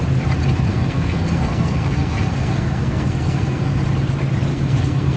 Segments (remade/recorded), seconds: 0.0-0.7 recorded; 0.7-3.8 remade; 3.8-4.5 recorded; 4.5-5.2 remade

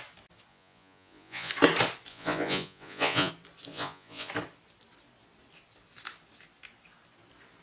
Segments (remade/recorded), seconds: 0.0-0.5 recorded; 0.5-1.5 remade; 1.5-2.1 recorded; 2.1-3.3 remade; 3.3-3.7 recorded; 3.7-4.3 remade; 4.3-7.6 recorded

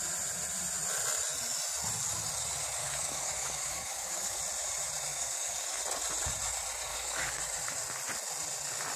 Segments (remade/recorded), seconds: 0.0-2.8 recorded; 2.8-4.4 remade; 4.4-5.1 recorded; 5.1-5.8 remade; 5.8-6.9 recorded; 6.9-7.4 remade; 7.4-9.0 recorded